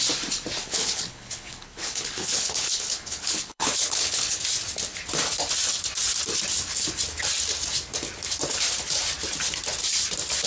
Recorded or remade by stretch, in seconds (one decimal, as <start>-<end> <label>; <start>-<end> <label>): 0.0-0.6 recorded; 0.6-4.4 remade; 4.4-10.5 recorded